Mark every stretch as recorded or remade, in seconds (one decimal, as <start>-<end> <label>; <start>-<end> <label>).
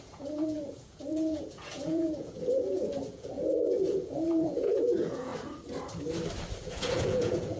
0.0-5.3 remade; 5.3-6.6 recorded; 6.6-7.6 remade